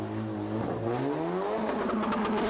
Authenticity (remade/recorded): recorded